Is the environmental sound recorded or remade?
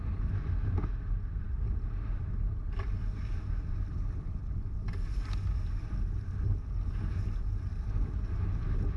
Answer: recorded